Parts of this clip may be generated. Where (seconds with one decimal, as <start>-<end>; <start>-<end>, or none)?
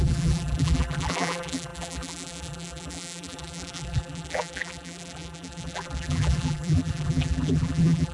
0.0-8.1